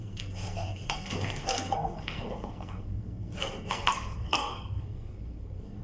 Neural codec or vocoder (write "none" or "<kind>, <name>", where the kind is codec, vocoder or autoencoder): codec, SNAC